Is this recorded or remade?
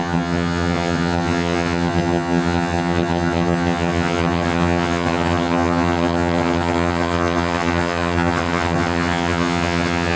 remade